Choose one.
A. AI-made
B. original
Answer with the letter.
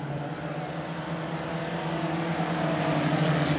B